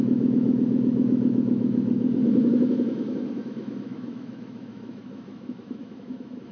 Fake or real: fake